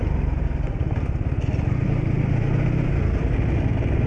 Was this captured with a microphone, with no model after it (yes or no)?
yes